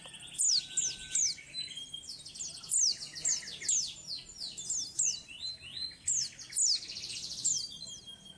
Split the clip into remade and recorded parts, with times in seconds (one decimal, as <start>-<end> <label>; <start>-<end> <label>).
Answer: 0.0-8.4 recorded